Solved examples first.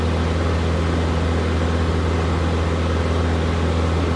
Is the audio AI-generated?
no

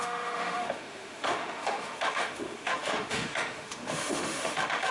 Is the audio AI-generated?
yes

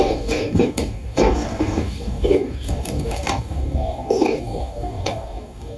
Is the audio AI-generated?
yes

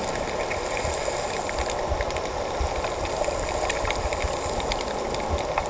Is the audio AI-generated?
no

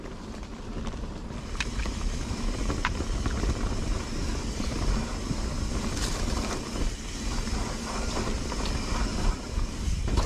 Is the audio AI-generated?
no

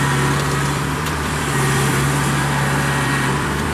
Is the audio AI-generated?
yes